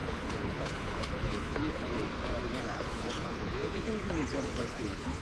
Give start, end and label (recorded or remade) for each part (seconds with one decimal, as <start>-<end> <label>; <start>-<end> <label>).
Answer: 0.0-2.0 remade; 2.0-2.6 recorded; 2.6-5.2 remade